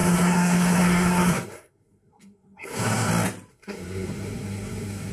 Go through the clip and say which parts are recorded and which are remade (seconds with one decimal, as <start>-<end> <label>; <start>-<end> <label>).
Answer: 0.0-3.1 remade; 3.1-3.5 recorded; 3.5-5.1 remade